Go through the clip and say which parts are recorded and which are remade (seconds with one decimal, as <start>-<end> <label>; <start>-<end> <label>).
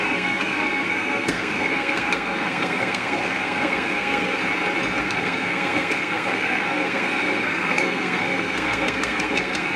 0.0-4.4 remade; 4.4-5.0 recorded; 5.0-9.8 remade